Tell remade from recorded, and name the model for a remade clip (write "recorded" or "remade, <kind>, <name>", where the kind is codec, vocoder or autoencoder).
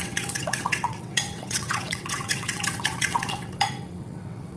remade, vocoder, WaveNeXt